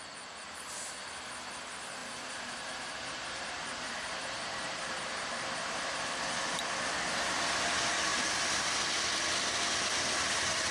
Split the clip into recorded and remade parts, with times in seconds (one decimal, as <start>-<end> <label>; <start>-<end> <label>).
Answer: 0.0-2.0 recorded; 2.0-6.1 remade; 6.1-8.1 recorded; 8.1-8.8 remade; 8.8-10.7 recorded

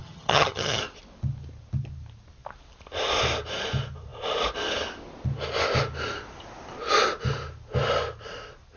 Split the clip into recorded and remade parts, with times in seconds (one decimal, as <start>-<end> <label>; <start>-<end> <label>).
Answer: 0.0-0.8 remade; 0.8-8.8 recorded

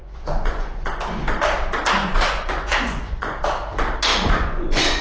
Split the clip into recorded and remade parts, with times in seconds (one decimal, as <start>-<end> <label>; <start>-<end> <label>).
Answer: 0.0-1.0 remade; 1.0-2.0 recorded; 2.0-3.4 remade; 3.4-4.1 recorded; 4.1-5.0 remade

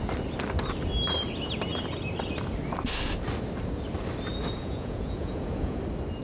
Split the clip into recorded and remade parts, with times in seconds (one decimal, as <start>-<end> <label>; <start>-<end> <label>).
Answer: 0.0-4.3 recorded; 4.3-5.8 remade; 5.8-6.2 recorded

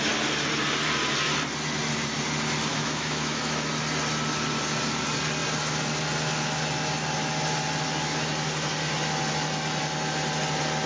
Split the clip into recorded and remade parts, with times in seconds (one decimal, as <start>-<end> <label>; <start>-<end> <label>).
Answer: 0.0-2.7 recorded; 2.7-3.7 remade; 3.7-10.9 recorded

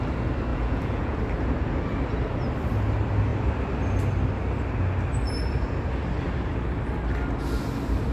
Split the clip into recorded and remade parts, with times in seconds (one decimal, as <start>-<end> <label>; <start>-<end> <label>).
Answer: 0.0-0.5 recorded; 0.5-1.2 remade; 1.2-8.1 recorded